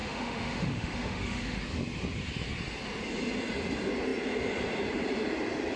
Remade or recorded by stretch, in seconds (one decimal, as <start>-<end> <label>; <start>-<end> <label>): 0.0-1.6 remade; 1.6-5.8 recorded